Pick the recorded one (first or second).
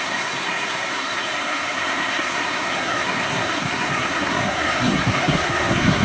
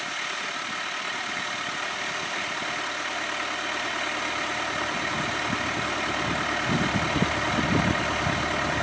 second